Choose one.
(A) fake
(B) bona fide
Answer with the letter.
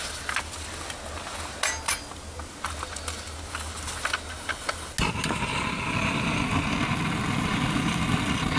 B